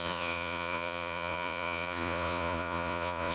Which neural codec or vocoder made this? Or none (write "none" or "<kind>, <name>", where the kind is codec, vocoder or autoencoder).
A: vocoder, Vocos